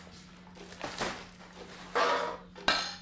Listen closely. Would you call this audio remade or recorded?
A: recorded